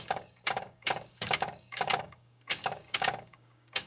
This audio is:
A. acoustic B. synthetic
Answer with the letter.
B